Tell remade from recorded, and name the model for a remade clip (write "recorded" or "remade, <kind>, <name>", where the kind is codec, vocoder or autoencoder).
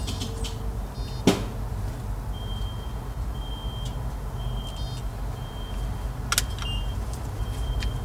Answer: recorded